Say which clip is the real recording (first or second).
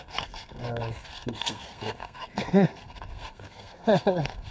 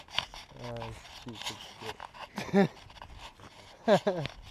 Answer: second